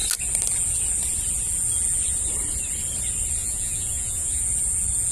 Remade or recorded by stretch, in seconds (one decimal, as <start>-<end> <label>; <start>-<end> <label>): 0.0-3.4 recorded; 3.4-4.4 remade; 4.4-5.1 recorded